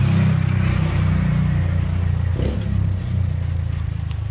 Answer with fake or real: real